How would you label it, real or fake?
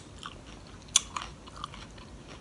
real